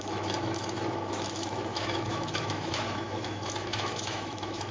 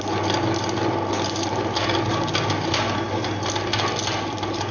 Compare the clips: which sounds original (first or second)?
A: second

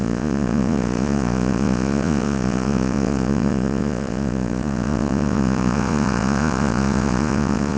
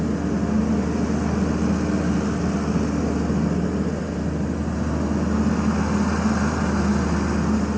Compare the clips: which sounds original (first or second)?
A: second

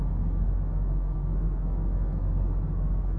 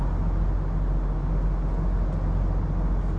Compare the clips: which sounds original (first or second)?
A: second